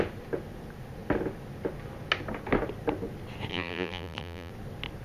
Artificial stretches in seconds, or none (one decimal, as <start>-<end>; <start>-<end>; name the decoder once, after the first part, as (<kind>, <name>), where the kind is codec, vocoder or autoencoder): 3.5-4.5 (vocoder, BigVGAN v2)